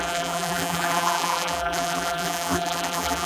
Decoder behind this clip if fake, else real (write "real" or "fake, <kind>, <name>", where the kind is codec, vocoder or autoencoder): fake, vocoder, BigVGAN v2